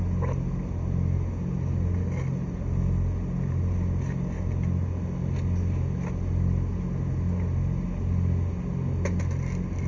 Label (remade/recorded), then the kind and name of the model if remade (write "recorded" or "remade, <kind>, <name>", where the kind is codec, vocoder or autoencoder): recorded